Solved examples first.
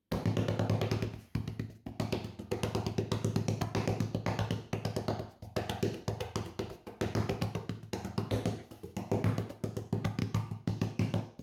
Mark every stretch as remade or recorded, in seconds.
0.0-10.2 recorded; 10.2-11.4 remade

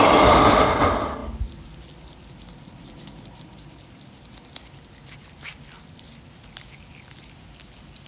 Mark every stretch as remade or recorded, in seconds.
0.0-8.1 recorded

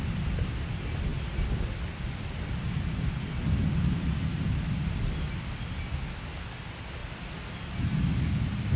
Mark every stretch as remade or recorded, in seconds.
0.0-8.8 recorded

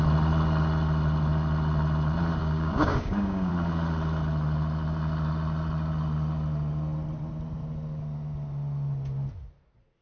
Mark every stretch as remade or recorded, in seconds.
0.0-2.4 recorded; 2.4-3.5 remade; 3.5-10.0 recorded

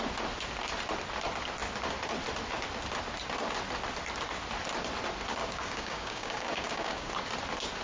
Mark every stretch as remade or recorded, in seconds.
0.0-5.4 recorded; 5.4-7.1 remade; 7.1-7.8 recorded